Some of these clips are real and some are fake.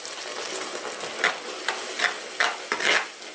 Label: real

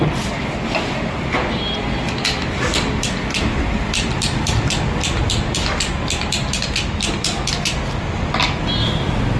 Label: real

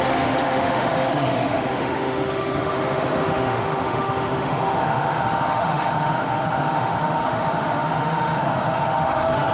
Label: fake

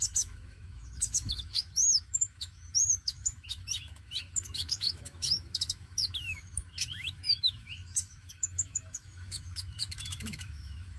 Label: fake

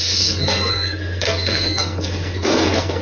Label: fake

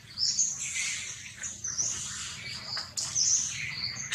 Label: real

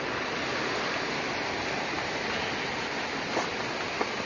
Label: real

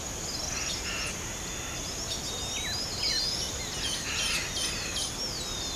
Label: real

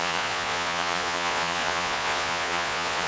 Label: fake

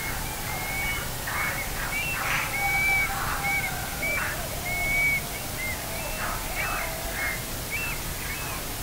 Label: real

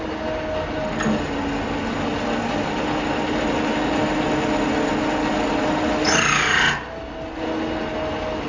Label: real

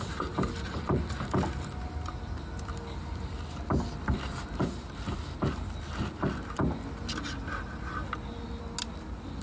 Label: real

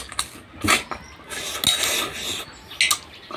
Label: real